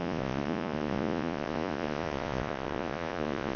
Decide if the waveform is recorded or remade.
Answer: remade